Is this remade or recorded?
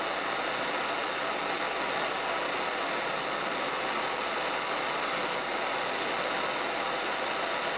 recorded